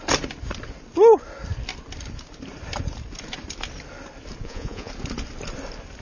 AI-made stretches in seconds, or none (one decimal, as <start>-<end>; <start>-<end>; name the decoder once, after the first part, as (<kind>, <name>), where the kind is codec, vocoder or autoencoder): 4.4-4.9 (vocoder, Vocos)

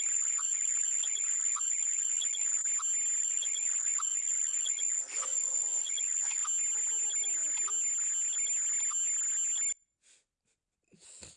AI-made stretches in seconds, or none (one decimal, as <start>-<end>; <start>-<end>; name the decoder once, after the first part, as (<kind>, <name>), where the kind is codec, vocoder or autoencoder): 0.0-2.6 (vocoder, Vocos); 3.2-6.4